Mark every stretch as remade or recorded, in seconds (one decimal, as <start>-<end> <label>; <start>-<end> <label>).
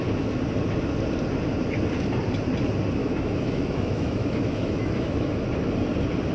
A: 0.0-3.0 recorded; 3.0-5.3 remade; 5.3-6.3 recorded